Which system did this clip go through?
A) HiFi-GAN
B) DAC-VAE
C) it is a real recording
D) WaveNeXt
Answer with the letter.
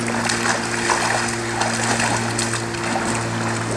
C